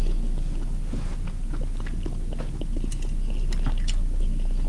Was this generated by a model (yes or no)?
no